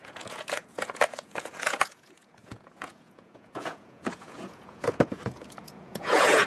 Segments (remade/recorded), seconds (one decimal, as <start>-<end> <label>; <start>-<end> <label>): 0.0-6.5 remade